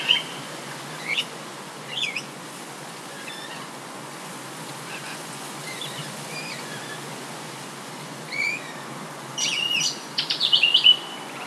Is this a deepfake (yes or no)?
yes